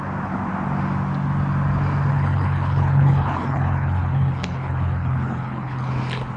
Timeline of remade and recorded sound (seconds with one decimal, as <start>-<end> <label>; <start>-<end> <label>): 0.0-2.1 recorded; 2.1-5.9 remade; 5.9-6.4 recorded